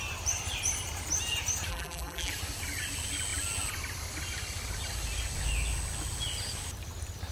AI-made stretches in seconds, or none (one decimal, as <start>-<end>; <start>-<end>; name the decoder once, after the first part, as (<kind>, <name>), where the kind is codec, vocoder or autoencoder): 1.7-2.3 (vocoder, BigVGAN v2)